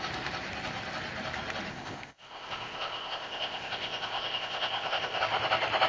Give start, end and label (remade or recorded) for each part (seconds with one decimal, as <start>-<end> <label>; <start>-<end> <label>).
0.0-1.7 recorded; 1.7-5.2 remade; 5.2-5.9 recorded